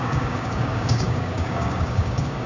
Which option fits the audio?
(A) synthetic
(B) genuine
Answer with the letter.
A